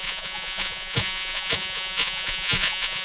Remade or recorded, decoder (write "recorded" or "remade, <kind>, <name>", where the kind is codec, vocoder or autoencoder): remade, vocoder, Vocos